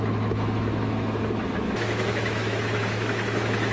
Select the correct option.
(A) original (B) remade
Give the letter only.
B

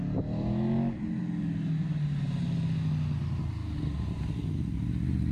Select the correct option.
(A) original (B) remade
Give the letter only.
A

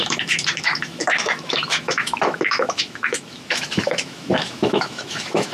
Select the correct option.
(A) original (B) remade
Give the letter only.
B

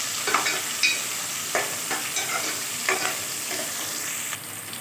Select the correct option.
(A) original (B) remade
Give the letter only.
A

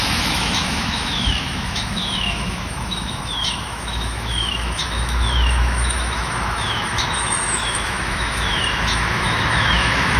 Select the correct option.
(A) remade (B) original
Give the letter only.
A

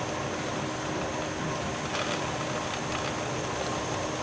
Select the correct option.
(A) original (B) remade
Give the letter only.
A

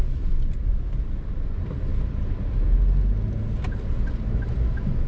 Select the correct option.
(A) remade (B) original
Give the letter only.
B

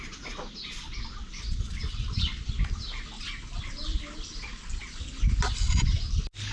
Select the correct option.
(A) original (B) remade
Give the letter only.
A